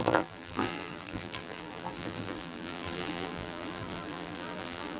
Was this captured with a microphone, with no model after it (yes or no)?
no